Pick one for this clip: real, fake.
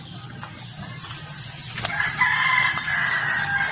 real